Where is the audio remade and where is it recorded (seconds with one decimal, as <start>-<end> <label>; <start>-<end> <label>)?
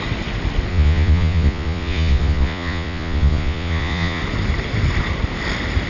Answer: 0.0-0.7 recorded; 0.7-4.2 remade; 4.2-5.9 recorded